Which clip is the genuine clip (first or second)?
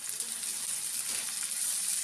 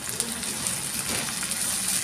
second